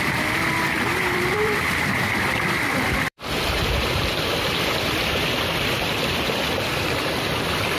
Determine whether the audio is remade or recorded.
remade